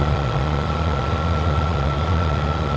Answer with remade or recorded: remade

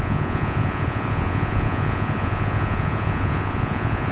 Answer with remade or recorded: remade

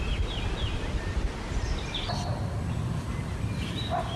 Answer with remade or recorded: recorded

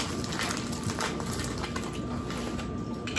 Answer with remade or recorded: recorded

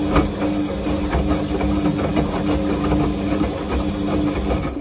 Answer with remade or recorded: recorded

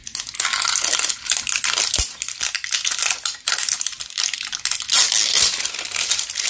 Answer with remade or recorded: recorded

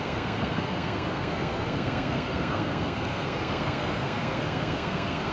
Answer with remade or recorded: remade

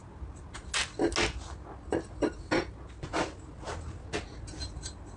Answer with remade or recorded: recorded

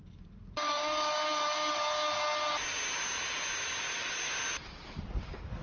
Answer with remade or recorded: recorded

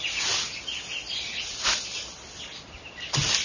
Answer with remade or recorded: recorded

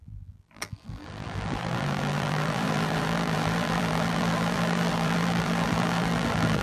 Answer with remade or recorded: remade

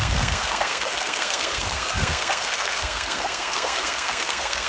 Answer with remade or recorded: remade